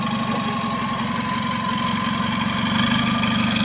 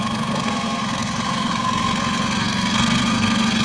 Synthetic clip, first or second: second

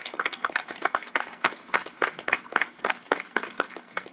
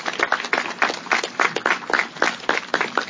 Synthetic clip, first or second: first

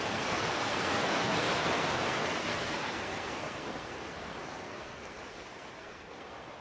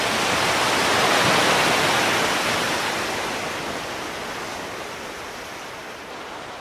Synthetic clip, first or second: first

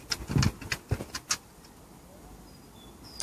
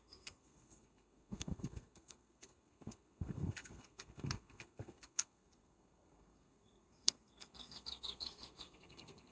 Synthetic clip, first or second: second